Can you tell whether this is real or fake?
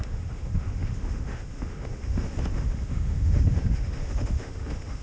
fake